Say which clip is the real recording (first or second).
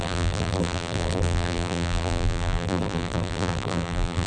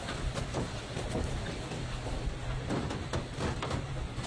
second